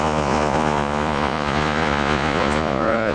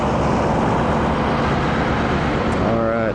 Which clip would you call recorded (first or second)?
second